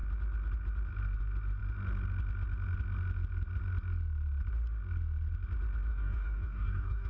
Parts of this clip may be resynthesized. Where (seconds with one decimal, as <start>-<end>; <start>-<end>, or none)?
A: 5.9-7.1

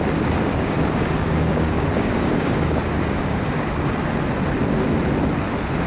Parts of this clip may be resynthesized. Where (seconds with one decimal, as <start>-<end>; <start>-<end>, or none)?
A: 0.5-3.9

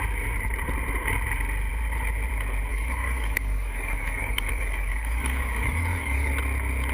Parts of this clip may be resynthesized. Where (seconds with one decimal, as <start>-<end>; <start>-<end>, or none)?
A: 2.7-6.3

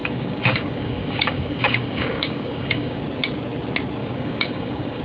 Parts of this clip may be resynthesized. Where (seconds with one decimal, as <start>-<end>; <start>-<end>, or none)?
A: 0.0-3.0; 4.0-5.0

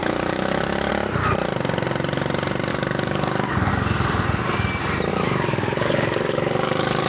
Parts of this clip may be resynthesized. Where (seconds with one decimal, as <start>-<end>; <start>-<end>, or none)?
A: 0.0-0.9; 2.7-3.7; 5.1-7.1

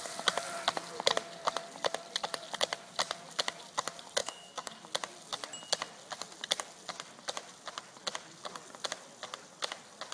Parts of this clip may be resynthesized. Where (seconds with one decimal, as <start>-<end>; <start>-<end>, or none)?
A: 4.2-4.7

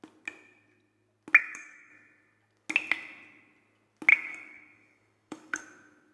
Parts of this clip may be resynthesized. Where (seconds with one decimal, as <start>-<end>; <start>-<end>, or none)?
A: 1.4-1.9; 4.1-5.6